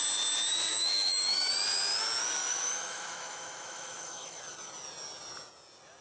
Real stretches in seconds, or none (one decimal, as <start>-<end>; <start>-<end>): 0.0-0.7; 1.5-2.4; 4.4-6.0